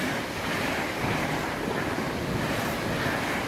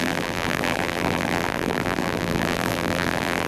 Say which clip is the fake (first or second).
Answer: second